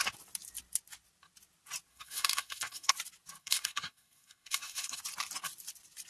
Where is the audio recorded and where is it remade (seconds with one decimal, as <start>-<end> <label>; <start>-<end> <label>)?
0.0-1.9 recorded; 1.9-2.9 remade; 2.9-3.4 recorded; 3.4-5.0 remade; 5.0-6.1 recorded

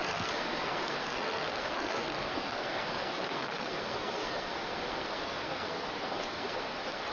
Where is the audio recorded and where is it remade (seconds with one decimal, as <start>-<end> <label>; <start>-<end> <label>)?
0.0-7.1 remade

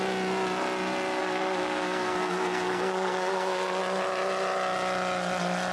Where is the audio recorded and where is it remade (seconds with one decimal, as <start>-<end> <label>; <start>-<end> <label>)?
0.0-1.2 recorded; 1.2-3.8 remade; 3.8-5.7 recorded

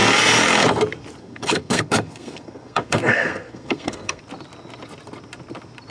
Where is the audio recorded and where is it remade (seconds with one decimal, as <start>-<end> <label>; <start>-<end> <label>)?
0.0-1.2 recorded; 1.2-4.2 remade; 4.2-5.9 recorded

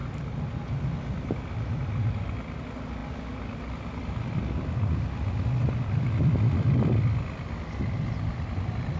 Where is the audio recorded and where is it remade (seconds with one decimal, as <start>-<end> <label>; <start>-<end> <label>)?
0.0-9.0 recorded

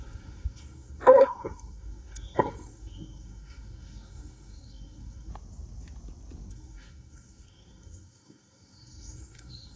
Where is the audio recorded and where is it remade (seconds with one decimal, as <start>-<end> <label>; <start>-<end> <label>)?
0.0-5.3 remade; 5.3-6.5 recorded; 6.5-9.8 remade